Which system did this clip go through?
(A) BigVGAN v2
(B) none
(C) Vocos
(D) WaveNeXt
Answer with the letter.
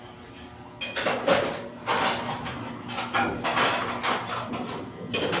B